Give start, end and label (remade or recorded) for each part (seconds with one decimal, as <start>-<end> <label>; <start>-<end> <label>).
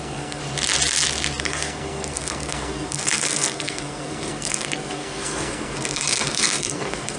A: 0.0-0.4 remade; 0.4-1.4 recorded; 1.4-7.2 remade